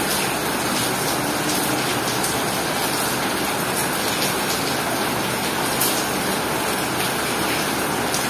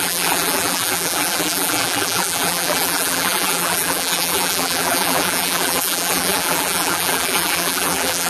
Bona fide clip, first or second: first